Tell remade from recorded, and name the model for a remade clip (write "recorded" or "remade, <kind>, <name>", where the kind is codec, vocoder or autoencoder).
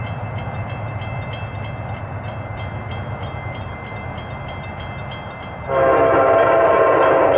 recorded